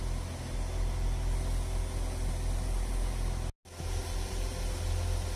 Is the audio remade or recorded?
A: recorded